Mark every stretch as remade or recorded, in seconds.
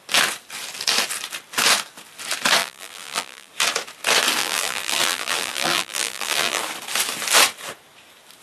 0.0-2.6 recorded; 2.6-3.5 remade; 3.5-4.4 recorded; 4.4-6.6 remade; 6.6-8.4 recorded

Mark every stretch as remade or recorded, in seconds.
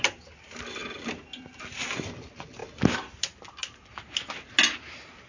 0.0-5.3 recorded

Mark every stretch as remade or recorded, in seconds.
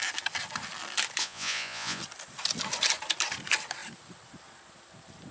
0.0-1.2 recorded; 1.2-2.0 remade; 2.0-5.3 recorded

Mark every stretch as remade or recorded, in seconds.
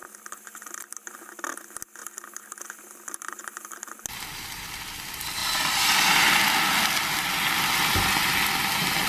0.0-9.1 recorded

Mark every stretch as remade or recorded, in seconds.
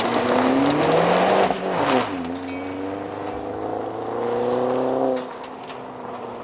0.0-6.4 recorded